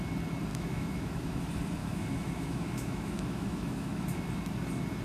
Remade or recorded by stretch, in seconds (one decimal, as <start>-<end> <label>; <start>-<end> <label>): 0.0-0.5 recorded; 0.5-1.4 remade; 1.4-1.8 recorded; 1.8-4.2 remade; 4.2-5.0 recorded